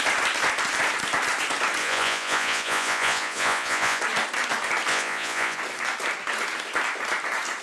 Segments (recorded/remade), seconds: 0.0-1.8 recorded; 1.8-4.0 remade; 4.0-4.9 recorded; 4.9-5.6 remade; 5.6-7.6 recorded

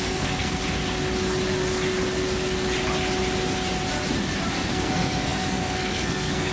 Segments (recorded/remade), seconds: 0.0-0.6 remade; 0.6-4.5 recorded; 4.5-6.5 remade